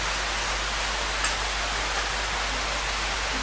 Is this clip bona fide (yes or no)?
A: yes